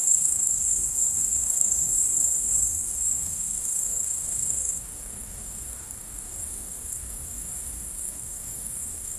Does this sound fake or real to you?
fake